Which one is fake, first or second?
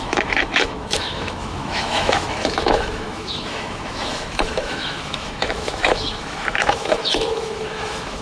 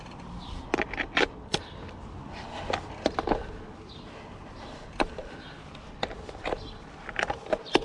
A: first